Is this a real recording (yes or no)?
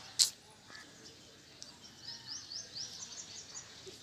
yes